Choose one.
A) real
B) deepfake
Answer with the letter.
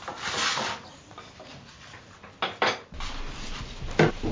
A